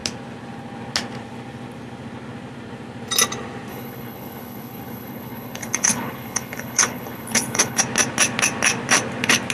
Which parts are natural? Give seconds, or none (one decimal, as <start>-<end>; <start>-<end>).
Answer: 0.0-3.7; 7.8-9.5

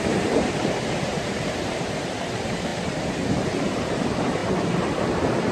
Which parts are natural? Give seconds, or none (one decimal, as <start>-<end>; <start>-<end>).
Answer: none

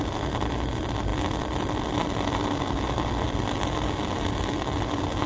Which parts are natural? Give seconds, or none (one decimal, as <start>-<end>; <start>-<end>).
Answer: 0.0-5.3

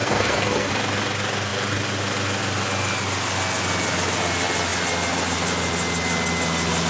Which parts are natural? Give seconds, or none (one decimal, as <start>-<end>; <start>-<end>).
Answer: 0.7-6.9

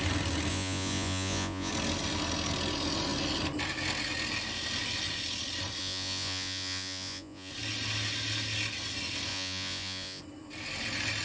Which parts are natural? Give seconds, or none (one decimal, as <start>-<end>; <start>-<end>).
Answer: 0.0-0.5; 1.7-5.8; 7.5-9.3; 10.2-11.2

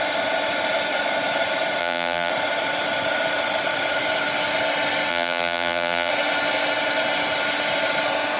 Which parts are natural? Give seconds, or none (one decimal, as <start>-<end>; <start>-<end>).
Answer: 0.0-1.8; 2.3-5.1; 6.1-8.4

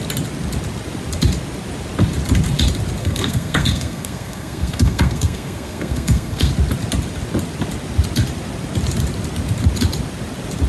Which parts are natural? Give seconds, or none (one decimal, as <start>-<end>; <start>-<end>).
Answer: 0.0-3.0; 6.5-10.7